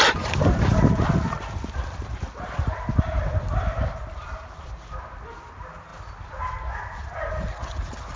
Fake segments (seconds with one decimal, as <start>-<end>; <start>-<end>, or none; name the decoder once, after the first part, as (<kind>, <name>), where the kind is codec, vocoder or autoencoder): 0.7-4.9 (vocoder, BigVGAN v2)

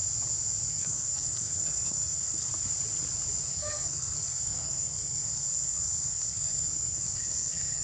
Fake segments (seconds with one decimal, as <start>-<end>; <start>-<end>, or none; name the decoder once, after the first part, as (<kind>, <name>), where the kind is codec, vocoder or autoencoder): 0.7-2.5 (codec, SNAC); 3.5-7.8